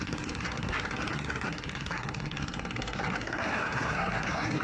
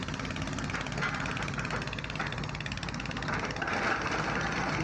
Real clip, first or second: second